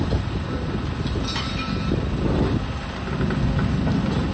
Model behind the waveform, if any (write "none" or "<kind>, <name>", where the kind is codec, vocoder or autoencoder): none